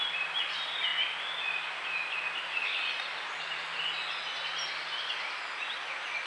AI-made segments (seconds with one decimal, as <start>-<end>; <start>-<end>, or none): none